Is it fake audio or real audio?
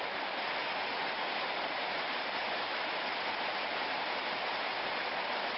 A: real